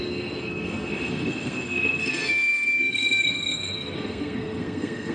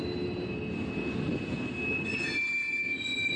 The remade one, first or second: first